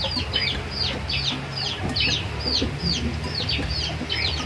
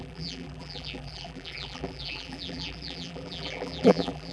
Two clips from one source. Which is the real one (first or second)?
first